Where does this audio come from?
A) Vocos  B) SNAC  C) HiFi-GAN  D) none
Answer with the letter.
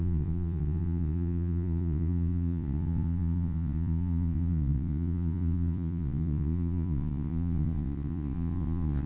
A